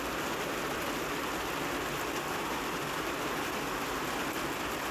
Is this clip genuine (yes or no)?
yes